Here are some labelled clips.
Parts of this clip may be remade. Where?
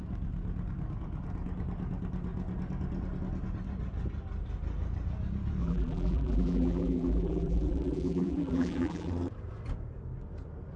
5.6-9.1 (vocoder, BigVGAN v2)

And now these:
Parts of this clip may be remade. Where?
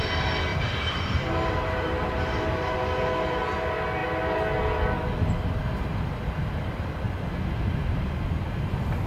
0.5-3.0 (vocoder, BigVGAN v2)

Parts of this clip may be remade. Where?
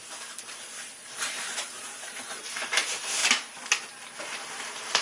0.0-3.2 (vocoder, BigVGAN v2); 4.2-5.0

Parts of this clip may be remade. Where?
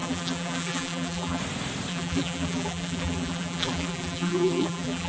0.0-1.4 (vocoder, BigVGAN v2); 1.9-5.1